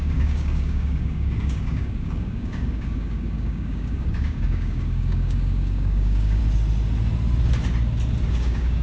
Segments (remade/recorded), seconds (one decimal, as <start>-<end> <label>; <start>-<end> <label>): 0.0-6.4 remade; 6.4-8.3 recorded; 8.3-8.8 remade